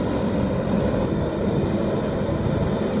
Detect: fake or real real